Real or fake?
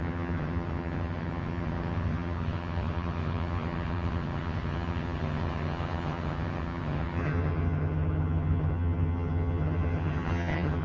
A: fake